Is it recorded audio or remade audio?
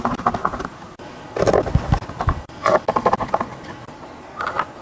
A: recorded